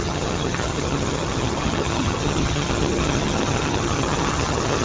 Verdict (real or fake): fake